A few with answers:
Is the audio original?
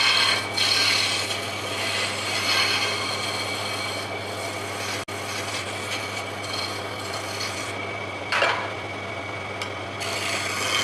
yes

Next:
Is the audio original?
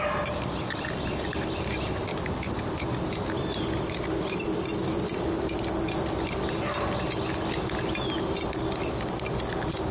yes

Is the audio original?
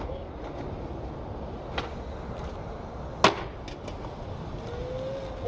yes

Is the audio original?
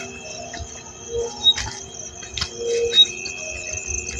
yes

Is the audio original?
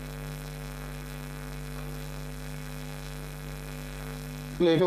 no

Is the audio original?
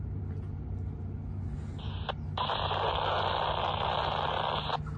yes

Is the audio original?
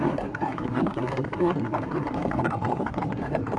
no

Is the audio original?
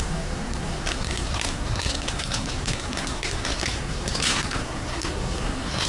no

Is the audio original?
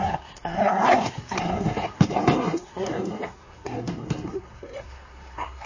no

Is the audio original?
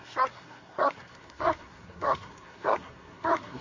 no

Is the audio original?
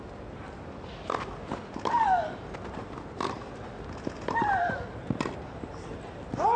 yes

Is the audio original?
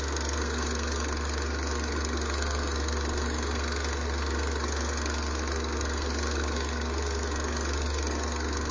no